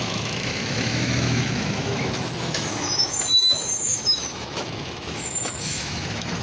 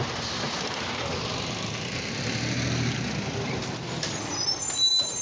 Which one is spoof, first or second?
first